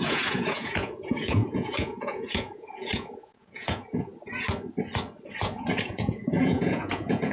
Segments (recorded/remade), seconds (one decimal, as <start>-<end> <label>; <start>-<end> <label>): 0.0-4.1 remade; 4.1-5.8 recorded; 5.8-7.3 remade